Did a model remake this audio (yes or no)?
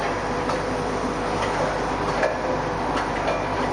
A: no